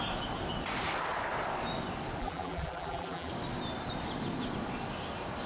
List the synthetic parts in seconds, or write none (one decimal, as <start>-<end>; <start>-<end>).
2.2-3.3